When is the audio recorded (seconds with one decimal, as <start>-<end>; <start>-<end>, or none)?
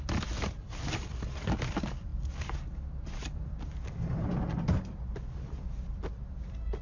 0.0-6.8